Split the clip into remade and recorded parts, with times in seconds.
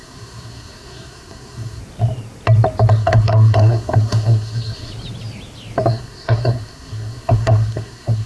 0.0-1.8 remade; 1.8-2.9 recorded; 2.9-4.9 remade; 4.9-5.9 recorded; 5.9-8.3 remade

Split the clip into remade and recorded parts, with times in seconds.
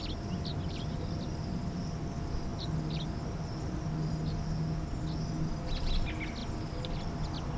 0.0-7.6 recorded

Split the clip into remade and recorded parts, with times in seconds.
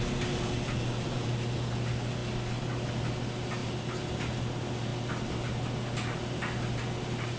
0.0-7.4 recorded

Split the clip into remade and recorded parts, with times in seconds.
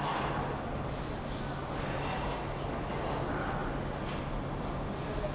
0.0-5.3 recorded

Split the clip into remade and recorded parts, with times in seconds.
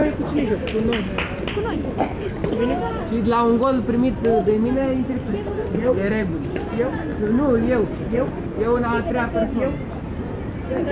0.0-10.9 recorded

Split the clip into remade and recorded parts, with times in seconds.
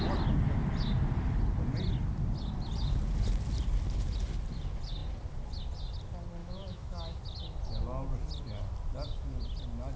0.0-6.4 recorded; 6.4-7.2 remade; 7.2-10.0 recorded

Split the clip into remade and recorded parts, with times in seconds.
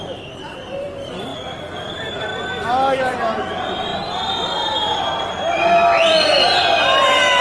0.0-2.3 remade; 2.3-3.0 recorded; 3.0-3.9 remade; 3.9-5.0 recorded; 5.0-7.4 remade